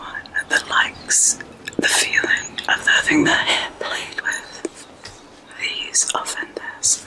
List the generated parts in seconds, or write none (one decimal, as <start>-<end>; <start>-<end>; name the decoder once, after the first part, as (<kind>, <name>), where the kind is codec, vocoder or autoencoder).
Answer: 2.8-4.2 (autoencoder, DAC-VAE)